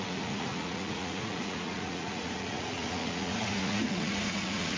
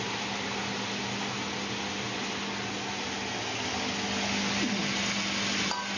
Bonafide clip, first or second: second